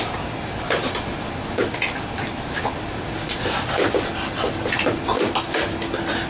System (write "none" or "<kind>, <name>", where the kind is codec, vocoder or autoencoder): none